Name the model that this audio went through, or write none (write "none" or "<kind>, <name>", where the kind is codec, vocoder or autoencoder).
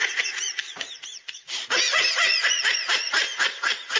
vocoder, Vocos